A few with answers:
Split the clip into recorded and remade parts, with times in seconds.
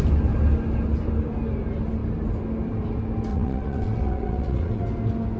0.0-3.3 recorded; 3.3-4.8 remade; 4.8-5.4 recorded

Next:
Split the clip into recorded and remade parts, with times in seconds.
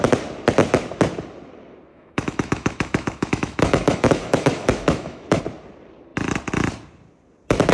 0.0-1.9 recorded; 1.9-5.4 remade; 5.4-7.7 recorded